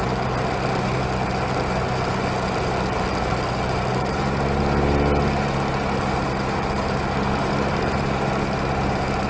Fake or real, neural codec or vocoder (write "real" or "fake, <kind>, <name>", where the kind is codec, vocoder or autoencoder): real